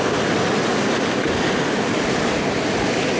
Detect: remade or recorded recorded